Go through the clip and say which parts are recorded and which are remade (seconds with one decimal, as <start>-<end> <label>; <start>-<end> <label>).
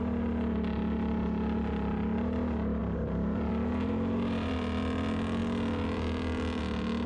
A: 0.0-2.8 recorded; 2.8-3.5 remade; 3.5-7.1 recorded